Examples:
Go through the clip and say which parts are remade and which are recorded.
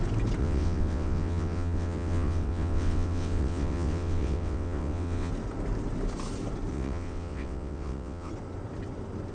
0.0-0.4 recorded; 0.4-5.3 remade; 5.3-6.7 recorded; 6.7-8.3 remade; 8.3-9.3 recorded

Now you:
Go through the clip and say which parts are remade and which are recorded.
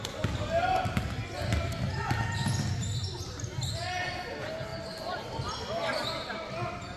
0.0-7.0 recorded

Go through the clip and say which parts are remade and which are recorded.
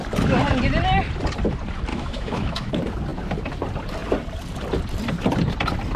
0.0-1.9 recorded; 1.9-2.7 remade; 2.7-6.0 recorded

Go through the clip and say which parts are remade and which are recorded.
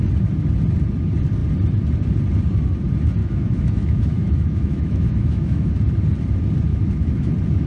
0.0-3.2 recorded; 3.2-5.7 remade; 5.7-6.7 recorded; 6.7-7.3 remade; 7.3-7.7 recorded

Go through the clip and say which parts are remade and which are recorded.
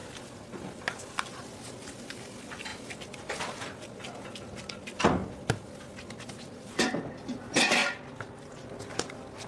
0.0-9.5 recorded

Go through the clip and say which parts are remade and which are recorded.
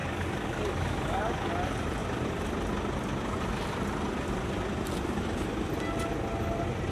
0.0-1.5 remade; 1.5-6.9 recorded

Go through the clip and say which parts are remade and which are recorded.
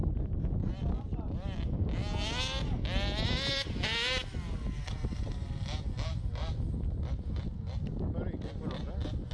0.0-9.3 recorded